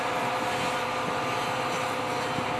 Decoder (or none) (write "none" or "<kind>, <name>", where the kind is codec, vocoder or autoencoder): none